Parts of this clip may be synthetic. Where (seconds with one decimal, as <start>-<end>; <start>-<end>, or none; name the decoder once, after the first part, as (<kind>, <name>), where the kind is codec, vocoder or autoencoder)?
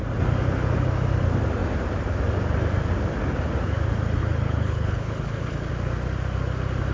4.2-5.7 (codec, HILCodec)